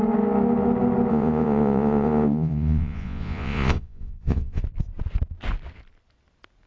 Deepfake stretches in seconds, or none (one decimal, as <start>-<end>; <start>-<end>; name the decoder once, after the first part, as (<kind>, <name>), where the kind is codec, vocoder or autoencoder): 1.1-4.6 (vocoder, Vocos)